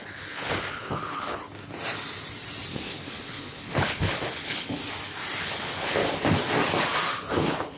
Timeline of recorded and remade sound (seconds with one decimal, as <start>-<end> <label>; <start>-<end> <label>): 0.0-1.4 remade; 1.4-2.7 recorded; 2.7-4.8 remade; 4.8-5.4 recorded; 5.4-6.0 remade; 6.0-7.3 recorded; 7.3-7.8 remade

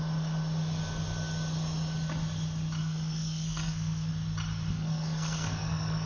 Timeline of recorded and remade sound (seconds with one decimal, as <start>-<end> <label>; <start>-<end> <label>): 0.0-2.8 recorded; 2.8-4.1 remade; 4.1-4.7 recorded; 4.7-6.1 remade

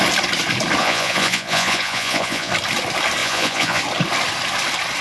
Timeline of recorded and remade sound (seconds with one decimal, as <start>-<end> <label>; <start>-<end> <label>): 0.0-0.8 recorded; 0.8-2.5 remade; 2.5-3.2 recorded; 3.2-3.8 remade; 3.8-5.0 recorded

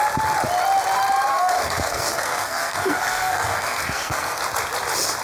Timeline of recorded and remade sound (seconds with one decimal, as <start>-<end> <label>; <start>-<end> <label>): 0.0-1.3 recorded; 1.3-4.4 remade; 4.4-5.2 recorded

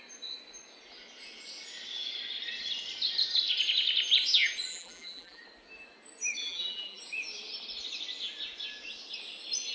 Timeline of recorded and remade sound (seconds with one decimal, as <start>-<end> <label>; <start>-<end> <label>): 0.0-4.7 recorded; 4.7-5.4 remade; 5.4-6.4 recorded; 6.4-7.0 remade; 7.0-9.7 recorded

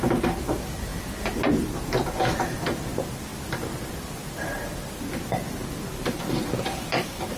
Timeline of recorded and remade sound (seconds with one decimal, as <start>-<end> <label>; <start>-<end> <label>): 0.0-7.4 recorded

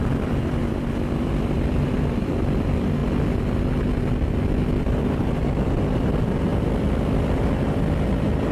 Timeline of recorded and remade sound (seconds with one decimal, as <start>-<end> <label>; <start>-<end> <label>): 0.0-3.0 remade; 3.0-5.2 recorded; 5.2-8.5 remade

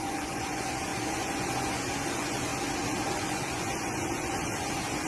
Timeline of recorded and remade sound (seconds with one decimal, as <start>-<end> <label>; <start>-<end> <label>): 0.0-2.5 remade; 2.5-3.1 recorded; 3.1-5.1 remade